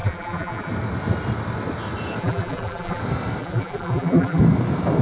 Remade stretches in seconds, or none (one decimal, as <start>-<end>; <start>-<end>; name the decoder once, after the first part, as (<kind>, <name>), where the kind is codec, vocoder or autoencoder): 0.0-0.7 (vocoder, BigVGAN v2); 2.2-3.0; 3.4-4.4